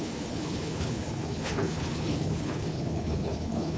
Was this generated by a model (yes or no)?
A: yes